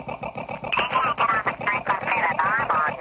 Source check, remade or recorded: recorded